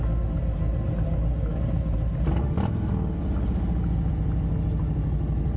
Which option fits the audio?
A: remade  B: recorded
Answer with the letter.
B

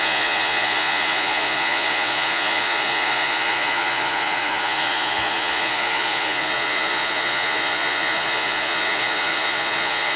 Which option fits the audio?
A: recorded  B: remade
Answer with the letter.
B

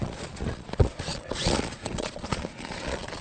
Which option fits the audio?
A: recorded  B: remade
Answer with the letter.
B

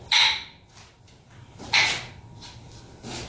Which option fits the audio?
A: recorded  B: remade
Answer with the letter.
A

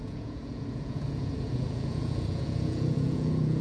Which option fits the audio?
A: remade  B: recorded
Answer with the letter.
A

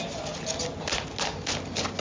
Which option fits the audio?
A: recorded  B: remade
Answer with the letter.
A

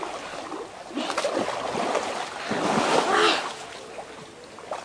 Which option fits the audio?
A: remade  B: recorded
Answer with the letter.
B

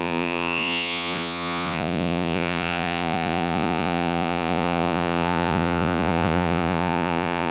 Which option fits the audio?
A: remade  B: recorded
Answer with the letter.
A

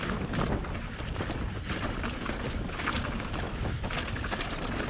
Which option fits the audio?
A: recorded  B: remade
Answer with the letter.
A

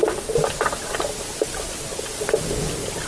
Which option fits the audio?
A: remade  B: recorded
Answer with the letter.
B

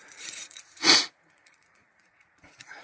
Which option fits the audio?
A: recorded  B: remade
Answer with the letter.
B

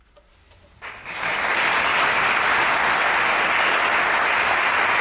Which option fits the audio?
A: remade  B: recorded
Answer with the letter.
B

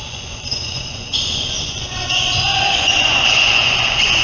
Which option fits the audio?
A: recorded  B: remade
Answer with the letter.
B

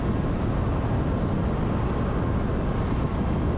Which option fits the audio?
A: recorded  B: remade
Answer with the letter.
A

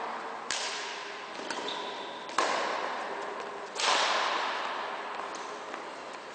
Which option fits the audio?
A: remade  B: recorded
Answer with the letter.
B